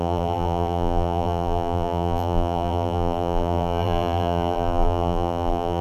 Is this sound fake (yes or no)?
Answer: yes